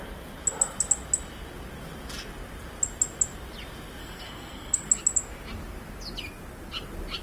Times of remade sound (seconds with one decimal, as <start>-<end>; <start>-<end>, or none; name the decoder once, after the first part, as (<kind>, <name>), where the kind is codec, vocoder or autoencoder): 4.0-4.9 (codec, SNAC)